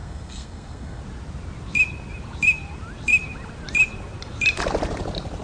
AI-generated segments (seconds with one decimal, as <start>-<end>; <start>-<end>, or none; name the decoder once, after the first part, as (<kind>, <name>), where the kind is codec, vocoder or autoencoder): 0.0-1.0 (codec, SNAC)